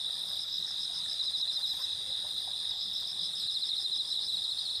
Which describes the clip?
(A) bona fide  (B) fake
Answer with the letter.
A